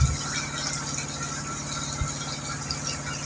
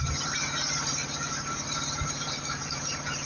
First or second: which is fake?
second